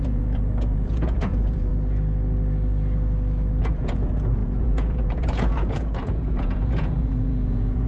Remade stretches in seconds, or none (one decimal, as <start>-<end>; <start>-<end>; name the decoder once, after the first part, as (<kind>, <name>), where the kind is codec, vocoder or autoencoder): 0.0-1.7 (vocoder, Vocos); 3.6-7.9